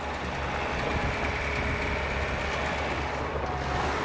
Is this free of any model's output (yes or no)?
yes